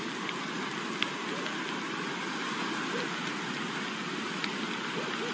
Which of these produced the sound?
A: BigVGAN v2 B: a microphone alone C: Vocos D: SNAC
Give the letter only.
B